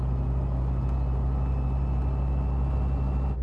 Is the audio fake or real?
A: real